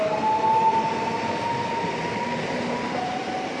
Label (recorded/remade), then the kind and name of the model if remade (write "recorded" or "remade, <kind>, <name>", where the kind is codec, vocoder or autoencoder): recorded